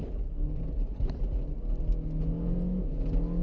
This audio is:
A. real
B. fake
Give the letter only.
A